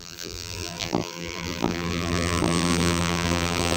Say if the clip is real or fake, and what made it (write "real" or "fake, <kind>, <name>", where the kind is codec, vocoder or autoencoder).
fake, vocoder, BigVGAN v2